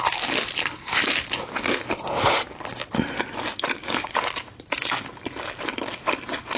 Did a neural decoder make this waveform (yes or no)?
no